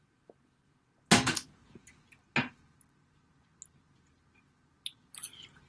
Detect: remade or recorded recorded